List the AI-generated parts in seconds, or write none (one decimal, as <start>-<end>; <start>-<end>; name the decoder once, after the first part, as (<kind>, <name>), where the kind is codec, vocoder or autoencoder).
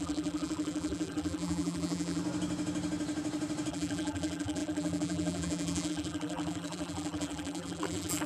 0.0-2.2 (vocoder, BigVGAN v2); 3.7-8.3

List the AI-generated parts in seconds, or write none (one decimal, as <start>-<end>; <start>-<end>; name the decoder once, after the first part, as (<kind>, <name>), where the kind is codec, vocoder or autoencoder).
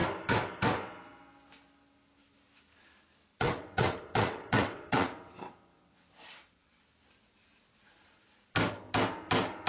3.3-6.8 (vocoder, WaveNeXt)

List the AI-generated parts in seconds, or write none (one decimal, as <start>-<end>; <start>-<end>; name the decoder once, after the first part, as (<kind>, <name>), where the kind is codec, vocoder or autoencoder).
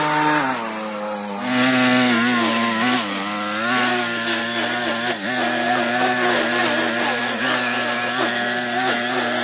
none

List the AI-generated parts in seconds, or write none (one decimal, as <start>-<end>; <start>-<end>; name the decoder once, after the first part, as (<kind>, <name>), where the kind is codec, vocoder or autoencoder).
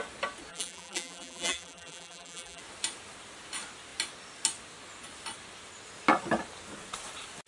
0.5-2.6 (vocoder, BigVGAN v2)